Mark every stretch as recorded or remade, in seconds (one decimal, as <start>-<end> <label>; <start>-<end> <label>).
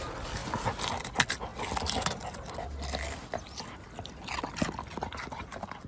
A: 0.0-5.9 recorded